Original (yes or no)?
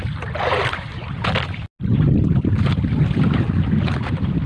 yes